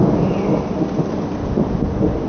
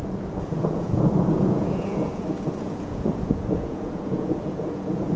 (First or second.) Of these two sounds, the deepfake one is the second